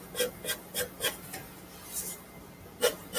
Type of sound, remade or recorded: recorded